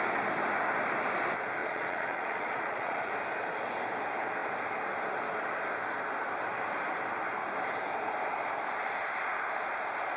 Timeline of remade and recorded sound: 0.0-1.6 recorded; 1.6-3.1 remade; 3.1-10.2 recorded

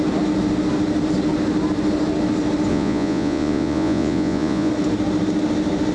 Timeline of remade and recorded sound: 0.0-2.7 recorded; 2.7-4.7 remade; 4.7-5.9 recorded

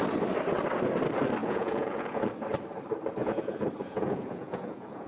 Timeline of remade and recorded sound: 0.0-1.4 recorded; 1.4-2.2 remade; 2.2-3.2 recorded; 3.2-5.1 remade

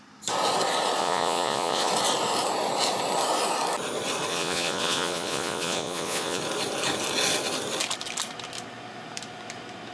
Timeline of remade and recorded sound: 0.0-1.0 recorded; 1.0-1.9 remade; 1.9-4.3 recorded; 4.3-6.4 remade; 6.4-9.9 recorded

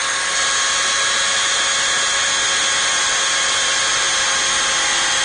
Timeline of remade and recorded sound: 0.0-5.2 recorded

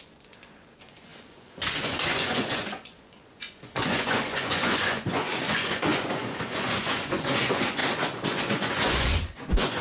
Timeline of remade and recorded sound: 0.0-9.8 remade

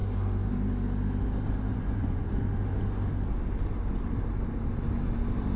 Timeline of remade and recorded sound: 0.0-1.7 recorded; 1.7-2.3 remade; 2.3-5.6 recorded